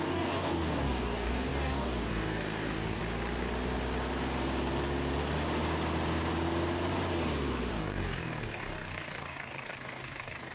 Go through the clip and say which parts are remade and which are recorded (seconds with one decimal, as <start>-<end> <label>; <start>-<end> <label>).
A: 0.0-3.0 remade; 3.0-7.7 recorded; 7.7-10.5 remade